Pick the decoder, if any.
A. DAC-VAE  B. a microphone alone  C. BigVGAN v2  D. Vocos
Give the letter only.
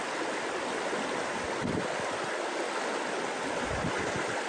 B